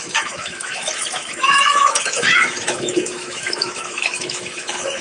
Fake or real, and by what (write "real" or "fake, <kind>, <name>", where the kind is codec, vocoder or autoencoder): fake, autoencoder, DAC-VAE